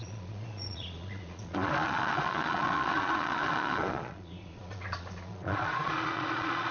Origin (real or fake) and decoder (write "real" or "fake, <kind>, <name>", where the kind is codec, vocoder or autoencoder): fake, vocoder, Vocos